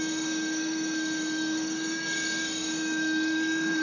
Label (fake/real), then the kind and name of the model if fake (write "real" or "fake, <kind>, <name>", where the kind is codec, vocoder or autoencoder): fake, codec, DAC